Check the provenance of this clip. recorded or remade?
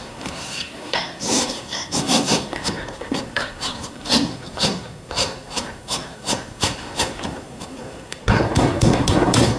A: remade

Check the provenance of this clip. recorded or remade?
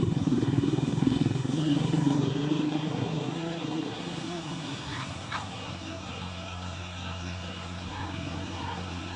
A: remade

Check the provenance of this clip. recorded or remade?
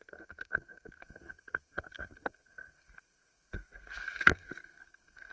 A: remade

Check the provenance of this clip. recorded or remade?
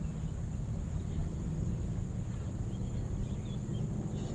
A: recorded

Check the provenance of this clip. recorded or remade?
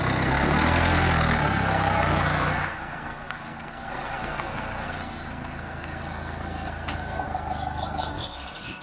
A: remade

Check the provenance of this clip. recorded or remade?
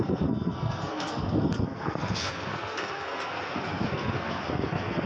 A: remade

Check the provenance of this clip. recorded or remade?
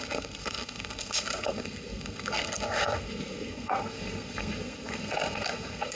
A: remade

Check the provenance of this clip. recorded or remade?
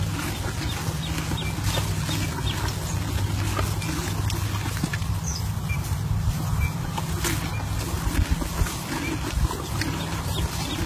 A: recorded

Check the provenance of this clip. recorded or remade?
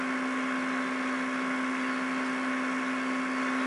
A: recorded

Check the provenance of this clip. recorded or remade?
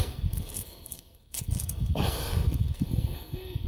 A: remade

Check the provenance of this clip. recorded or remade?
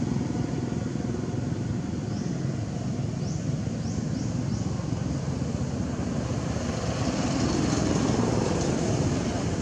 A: recorded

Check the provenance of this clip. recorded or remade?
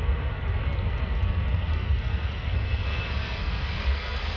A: remade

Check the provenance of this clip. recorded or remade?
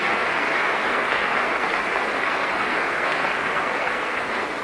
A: remade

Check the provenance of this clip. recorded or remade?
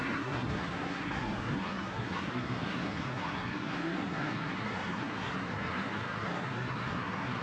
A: remade